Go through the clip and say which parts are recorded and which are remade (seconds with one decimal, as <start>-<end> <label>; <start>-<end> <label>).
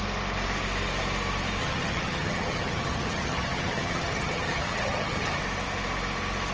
0.0-1.6 recorded; 1.6-5.4 remade; 5.4-6.5 recorded